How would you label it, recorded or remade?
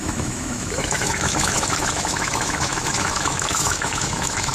remade